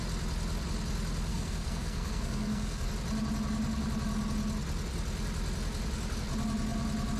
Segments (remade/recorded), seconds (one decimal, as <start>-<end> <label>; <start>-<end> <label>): 0.0-1.3 recorded; 1.3-2.9 remade; 2.9-7.2 recorded